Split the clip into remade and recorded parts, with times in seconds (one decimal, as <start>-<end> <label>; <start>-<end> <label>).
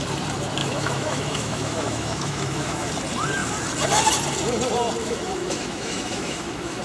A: 0.0-0.6 recorded; 0.6-2.9 remade; 2.9-5.0 recorded; 5.0-6.8 remade